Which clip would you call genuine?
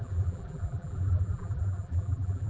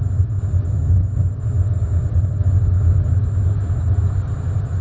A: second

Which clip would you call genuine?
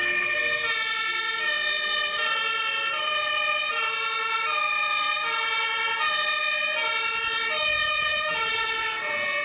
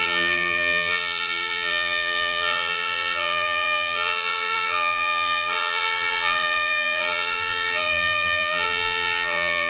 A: first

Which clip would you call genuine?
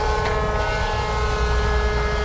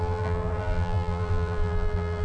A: first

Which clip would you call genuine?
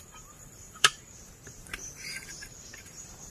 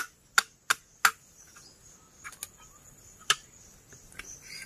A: second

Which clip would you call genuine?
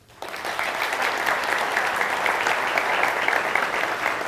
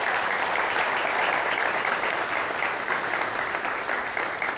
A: first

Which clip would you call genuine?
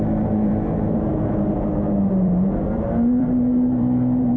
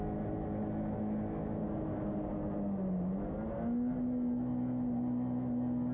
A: second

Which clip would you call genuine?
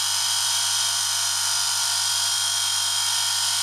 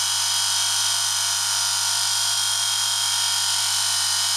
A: second